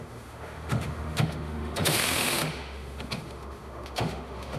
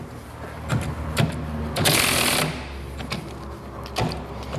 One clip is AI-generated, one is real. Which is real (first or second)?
second